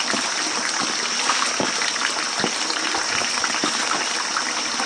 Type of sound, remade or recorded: recorded